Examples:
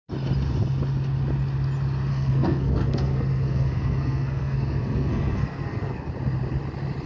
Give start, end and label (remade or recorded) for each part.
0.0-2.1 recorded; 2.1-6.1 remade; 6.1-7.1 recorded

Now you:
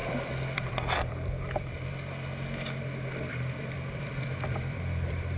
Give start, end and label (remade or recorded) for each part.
0.0-1.7 remade; 1.7-3.3 recorded; 3.3-5.4 remade